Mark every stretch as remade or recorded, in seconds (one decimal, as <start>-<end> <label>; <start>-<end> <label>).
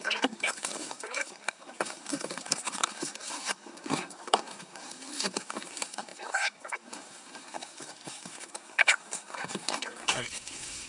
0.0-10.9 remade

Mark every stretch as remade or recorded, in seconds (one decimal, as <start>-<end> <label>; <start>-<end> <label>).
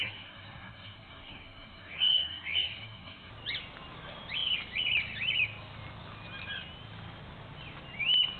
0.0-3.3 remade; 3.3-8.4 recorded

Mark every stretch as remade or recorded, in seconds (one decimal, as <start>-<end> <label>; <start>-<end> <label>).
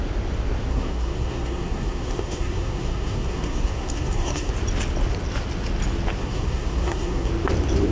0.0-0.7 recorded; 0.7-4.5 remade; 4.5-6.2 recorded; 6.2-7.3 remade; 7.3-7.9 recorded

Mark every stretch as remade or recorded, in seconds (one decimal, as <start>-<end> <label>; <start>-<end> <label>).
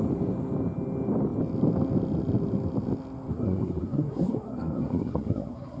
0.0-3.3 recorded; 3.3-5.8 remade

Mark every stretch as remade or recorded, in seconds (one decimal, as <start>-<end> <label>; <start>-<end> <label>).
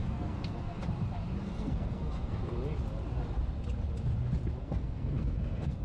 0.0-0.8 remade; 0.8-1.4 recorded; 1.4-2.4 remade; 2.4-4.6 recorded; 4.6-5.8 remade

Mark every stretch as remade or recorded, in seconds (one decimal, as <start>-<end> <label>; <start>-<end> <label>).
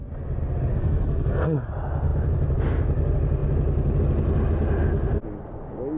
0.0-0.8 recorded; 0.8-1.7 remade; 1.7-6.0 recorded